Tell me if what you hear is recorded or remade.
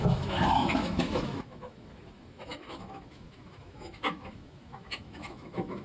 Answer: remade